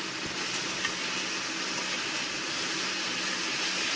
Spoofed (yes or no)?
no